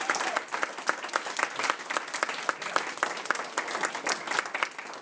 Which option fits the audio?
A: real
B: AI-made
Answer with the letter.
A